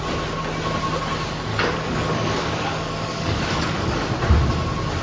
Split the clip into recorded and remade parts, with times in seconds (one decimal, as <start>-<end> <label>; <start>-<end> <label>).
0.0-1.5 recorded; 1.5-4.1 remade; 4.1-5.0 recorded